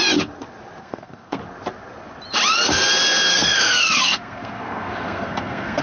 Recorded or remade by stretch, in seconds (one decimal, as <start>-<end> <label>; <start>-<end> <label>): 0.0-0.8 recorded; 0.8-1.4 remade; 1.4-3.3 recorded; 3.3-5.8 remade